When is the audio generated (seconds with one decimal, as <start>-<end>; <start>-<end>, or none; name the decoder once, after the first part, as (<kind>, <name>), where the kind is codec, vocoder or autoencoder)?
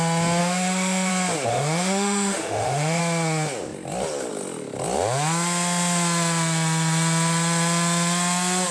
0.4-1.1 (autoencoder, DAC-VAE); 1.5-3.0